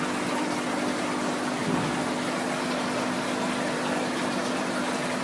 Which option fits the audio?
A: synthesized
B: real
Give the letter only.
B